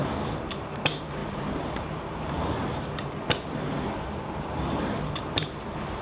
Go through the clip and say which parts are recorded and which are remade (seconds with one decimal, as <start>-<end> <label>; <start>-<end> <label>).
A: 0.0-0.5 recorded; 0.5-6.0 remade